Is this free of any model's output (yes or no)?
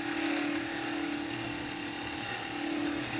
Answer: yes